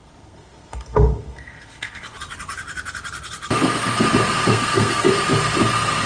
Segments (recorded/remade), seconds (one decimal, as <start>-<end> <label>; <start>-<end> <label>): 0.0-2.0 remade; 2.0-4.5 recorded; 4.5-5.1 remade; 5.1-6.1 recorded

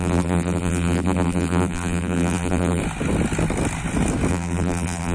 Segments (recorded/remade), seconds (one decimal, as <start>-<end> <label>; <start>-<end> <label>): 0.0-2.8 remade; 2.8-4.3 recorded; 4.3-5.1 remade